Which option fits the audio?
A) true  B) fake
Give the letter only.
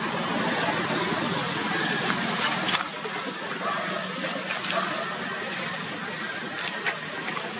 A